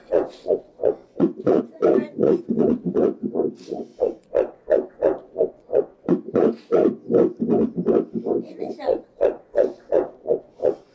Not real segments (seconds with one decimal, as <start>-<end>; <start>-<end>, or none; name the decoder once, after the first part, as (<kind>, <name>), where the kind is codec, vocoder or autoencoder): 0.0-7.0 (vocoder, Vocos); 8.5-10.9